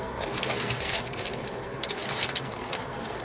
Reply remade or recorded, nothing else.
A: remade